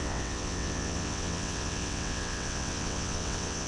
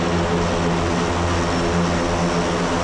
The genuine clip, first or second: second